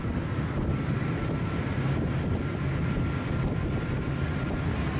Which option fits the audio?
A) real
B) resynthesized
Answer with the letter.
A